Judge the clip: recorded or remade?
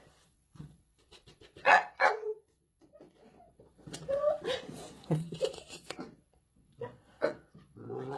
remade